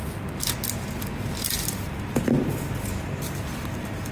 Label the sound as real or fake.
real